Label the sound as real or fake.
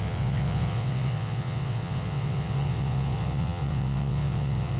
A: fake